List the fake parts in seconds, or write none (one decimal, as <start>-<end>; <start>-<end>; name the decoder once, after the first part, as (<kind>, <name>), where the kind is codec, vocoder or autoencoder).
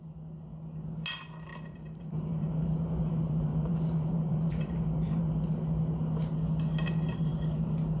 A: 1.5-5.2 (vocoder, BigVGAN v2); 7.3-8.0